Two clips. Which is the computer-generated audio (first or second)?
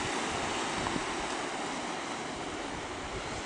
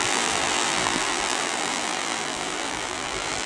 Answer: second